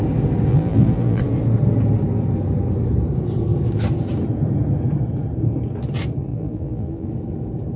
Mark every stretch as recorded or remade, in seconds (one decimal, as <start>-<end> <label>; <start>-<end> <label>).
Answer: 0.0-0.5 recorded; 0.5-1.2 remade; 1.2-6.3 recorded; 6.3-7.1 remade; 7.1-7.8 recorded